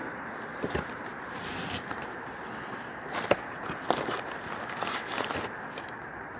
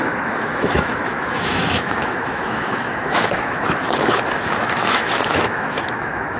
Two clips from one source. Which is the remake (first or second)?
second